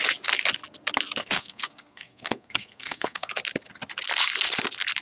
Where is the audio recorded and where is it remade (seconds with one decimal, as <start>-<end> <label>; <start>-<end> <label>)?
0.0-1.2 recorded; 1.2-3.3 remade; 3.3-5.0 recorded